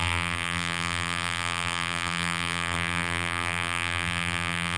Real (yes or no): no